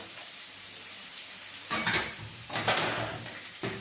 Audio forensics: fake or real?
fake